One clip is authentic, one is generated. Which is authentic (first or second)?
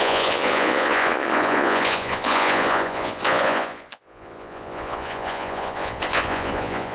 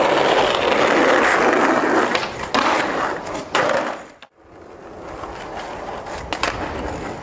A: second